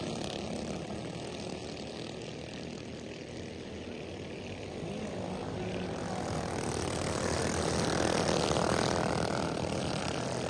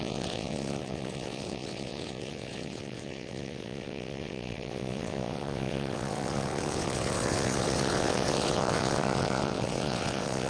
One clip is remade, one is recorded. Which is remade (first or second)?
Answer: second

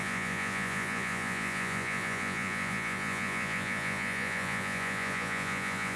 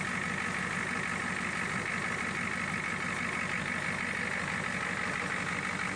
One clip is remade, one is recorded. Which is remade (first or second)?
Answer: first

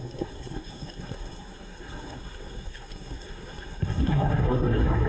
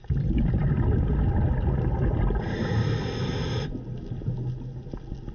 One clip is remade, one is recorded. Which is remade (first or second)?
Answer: first